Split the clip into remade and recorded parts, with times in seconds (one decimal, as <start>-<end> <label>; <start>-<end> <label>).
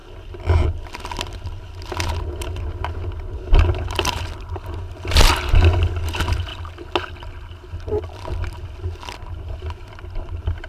0.0-10.7 recorded